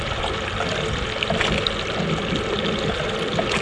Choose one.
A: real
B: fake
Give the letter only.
A